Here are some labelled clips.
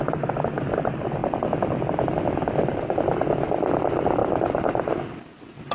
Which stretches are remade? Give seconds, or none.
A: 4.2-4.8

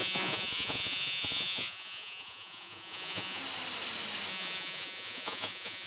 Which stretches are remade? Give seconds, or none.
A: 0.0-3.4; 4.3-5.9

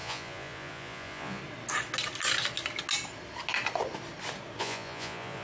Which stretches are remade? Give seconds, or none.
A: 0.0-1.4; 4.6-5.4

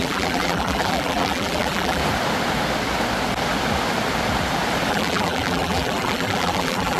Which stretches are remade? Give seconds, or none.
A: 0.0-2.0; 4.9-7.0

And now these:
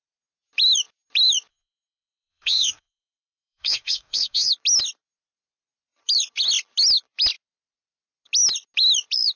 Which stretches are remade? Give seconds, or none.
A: 1.5-4.5

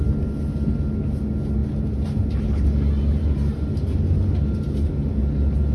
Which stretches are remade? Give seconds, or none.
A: none

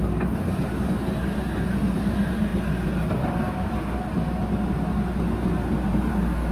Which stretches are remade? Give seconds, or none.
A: none

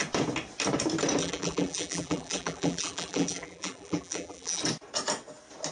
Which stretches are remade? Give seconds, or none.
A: 1.2-4.6